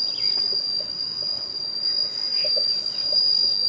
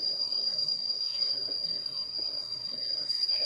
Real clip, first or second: first